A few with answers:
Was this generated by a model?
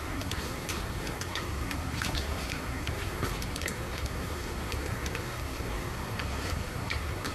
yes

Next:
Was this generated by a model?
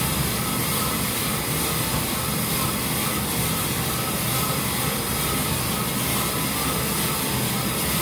no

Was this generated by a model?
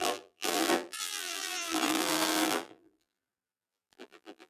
yes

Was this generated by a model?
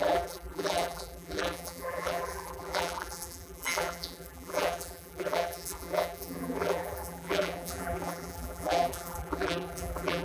yes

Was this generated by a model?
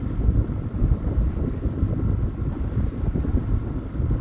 no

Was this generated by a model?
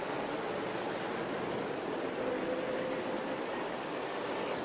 no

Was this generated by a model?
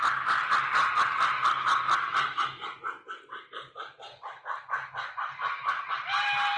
no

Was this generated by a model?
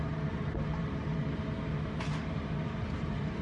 yes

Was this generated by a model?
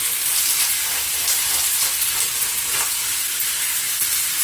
no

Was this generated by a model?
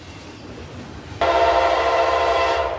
no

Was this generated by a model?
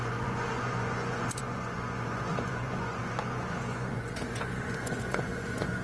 yes